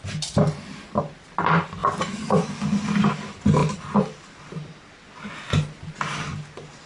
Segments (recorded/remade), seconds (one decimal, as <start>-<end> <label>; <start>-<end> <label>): 0.0-3.6 remade; 3.6-6.9 recorded